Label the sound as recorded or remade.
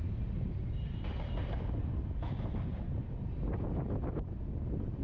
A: recorded